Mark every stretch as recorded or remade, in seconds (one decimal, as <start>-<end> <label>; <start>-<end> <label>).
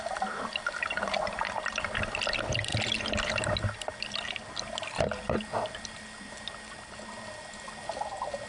0.0-8.5 recorded